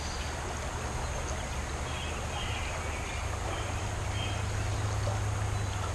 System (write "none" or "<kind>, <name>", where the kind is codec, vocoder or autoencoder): none